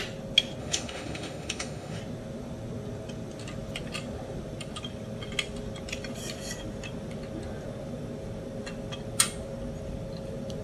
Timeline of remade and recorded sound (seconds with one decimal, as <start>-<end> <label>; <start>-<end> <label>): 0.0-0.6 recorded; 0.6-2.0 remade; 2.0-10.6 recorded